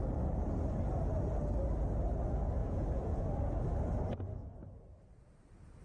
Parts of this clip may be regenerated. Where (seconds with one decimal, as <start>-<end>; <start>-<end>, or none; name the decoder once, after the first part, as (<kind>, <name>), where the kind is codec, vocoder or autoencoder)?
2.6-3.2 (vocoder, Vocos)